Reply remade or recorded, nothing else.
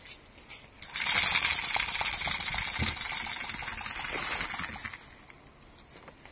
recorded